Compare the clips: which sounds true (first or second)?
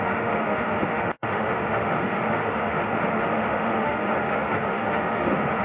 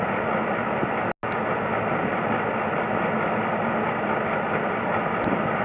second